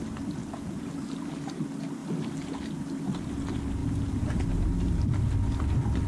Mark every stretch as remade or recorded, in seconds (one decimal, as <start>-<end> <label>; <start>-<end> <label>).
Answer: 0.0-0.4 recorded; 0.4-0.9 remade; 0.9-3.8 recorded; 3.8-4.4 remade; 4.4-6.1 recorded